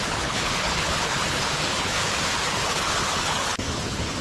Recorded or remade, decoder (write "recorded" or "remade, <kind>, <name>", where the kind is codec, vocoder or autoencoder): remade, codec, HILCodec